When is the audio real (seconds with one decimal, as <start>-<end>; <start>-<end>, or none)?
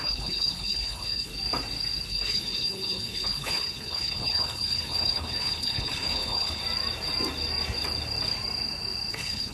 1.3-2.1; 6.6-9.1